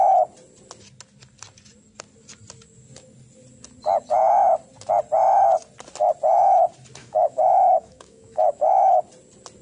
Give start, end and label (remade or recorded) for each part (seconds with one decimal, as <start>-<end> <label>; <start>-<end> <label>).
0.0-7.0 recorded; 7.0-9.0 remade; 9.0-9.6 recorded